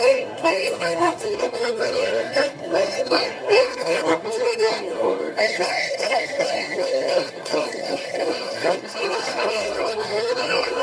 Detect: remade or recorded remade